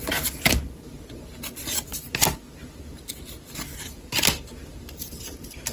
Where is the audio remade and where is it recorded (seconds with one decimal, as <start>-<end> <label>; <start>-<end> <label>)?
0.0-5.7 recorded